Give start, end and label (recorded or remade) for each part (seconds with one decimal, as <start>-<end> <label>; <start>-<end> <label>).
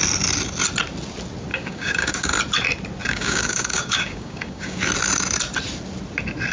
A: 0.0-1.5 recorded; 1.5-2.3 remade; 2.3-3.0 recorded; 3.0-4.8 remade; 4.8-6.5 recorded